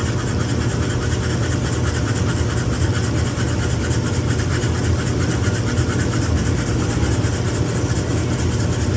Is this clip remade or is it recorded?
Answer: recorded